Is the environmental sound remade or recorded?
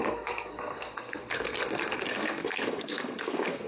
remade